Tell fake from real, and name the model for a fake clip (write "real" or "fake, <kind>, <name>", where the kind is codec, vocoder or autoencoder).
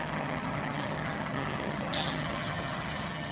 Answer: fake, vocoder, HiFi-GAN